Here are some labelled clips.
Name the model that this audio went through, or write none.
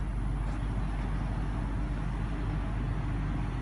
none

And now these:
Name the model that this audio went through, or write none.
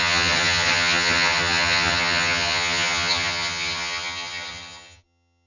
vocoder, HiFi-GAN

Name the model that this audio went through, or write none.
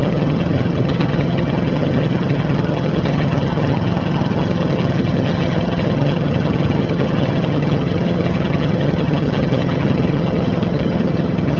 vocoder, HiFi-GAN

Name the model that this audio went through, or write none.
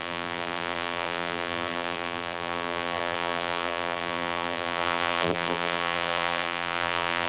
vocoder, BigVGAN v2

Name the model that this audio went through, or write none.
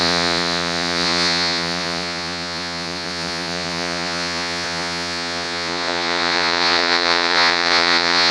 vocoder, Vocos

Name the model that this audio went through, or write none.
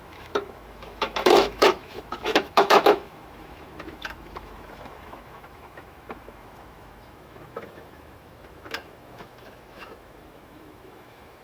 autoencoder, DAC-VAE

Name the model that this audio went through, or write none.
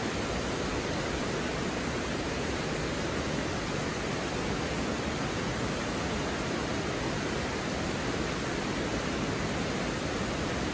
none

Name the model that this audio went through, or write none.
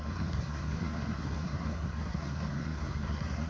codec, SNAC